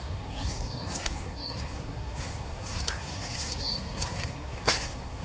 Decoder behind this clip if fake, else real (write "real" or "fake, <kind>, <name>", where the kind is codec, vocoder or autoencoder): fake, codec, SNAC